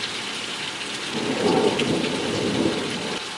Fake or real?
fake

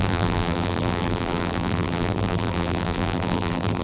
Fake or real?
fake